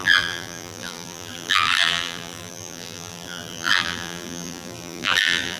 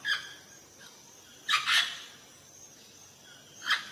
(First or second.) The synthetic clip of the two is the first